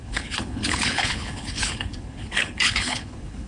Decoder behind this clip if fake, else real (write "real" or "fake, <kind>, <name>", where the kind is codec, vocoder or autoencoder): fake, codec, HILCodec